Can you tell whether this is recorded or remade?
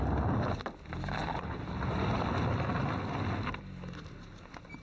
recorded